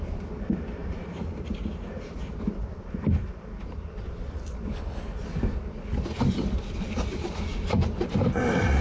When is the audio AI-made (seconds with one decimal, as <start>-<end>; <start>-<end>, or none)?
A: 0.8-1.5